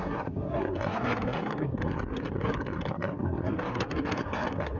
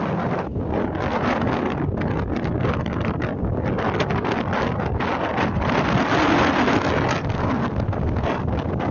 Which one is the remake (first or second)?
first